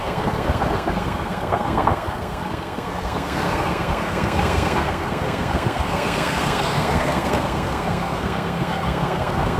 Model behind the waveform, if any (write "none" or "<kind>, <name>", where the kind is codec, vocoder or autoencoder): codec, SNAC